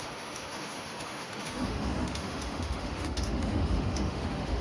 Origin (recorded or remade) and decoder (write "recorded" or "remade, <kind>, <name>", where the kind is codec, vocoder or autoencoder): remade, autoencoder, DAC-VAE